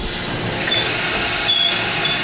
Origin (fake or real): real